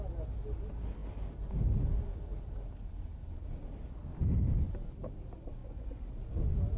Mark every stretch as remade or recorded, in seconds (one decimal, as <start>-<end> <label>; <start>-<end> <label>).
0.0-5.6 recorded; 5.6-6.1 remade; 6.1-6.8 recorded